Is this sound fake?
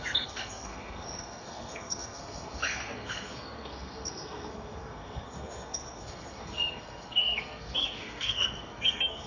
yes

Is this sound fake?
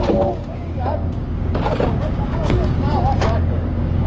yes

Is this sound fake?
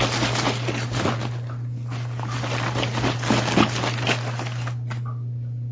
no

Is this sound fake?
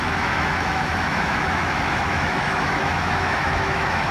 yes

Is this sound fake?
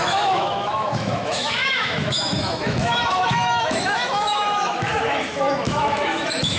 yes